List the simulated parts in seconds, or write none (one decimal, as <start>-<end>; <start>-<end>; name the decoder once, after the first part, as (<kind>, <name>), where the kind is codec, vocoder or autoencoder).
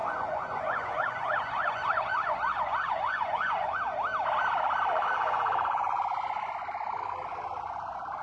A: 0.0-3.8 (vocoder, Vocos); 4.9-6.0